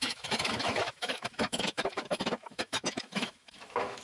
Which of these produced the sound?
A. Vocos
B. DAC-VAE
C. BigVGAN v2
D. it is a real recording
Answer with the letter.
B